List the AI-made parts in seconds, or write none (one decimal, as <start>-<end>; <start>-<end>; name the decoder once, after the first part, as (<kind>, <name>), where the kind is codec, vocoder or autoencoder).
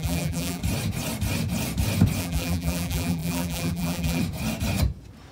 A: 0.0-0.6 (vocoder, BigVGAN v2); 2.2-4.2